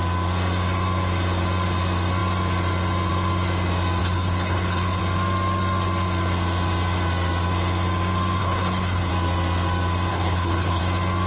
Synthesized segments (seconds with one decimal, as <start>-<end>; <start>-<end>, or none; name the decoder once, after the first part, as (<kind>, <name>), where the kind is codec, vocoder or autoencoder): 4.0-5.0 (codec, HILCodec); 8.4-9.1; 10.1-10.8